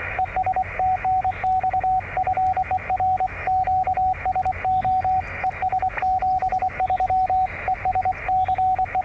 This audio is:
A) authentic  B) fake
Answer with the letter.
A